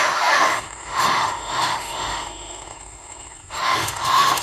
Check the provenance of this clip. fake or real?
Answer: fake